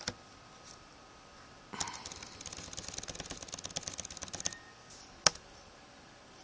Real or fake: real